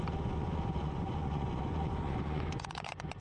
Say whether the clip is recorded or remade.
remade